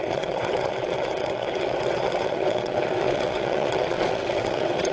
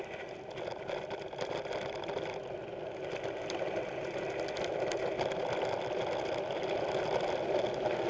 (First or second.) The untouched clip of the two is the second